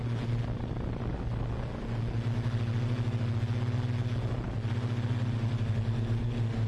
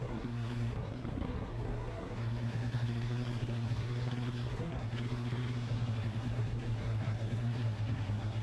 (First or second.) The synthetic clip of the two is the second